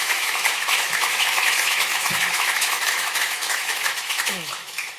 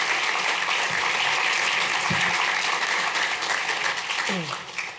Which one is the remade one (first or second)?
first